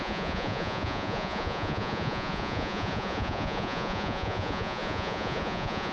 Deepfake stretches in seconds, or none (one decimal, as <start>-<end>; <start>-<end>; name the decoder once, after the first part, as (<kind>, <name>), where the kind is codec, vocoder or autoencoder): 0.0-5.9 (vocoder, Vocos)